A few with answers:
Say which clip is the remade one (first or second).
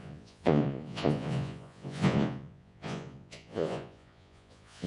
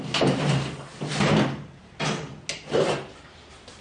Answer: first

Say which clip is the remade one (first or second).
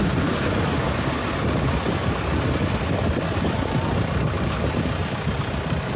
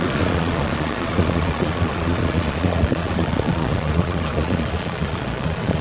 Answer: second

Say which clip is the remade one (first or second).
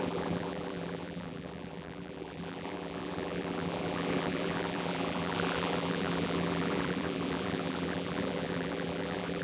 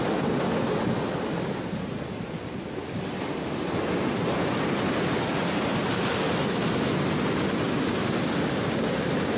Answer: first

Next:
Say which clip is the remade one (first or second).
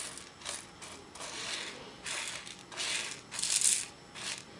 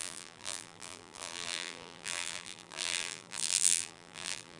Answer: second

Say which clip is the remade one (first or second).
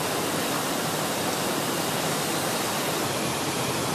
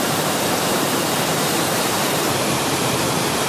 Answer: second